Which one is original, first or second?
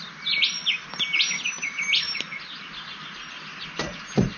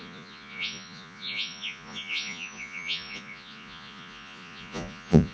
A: first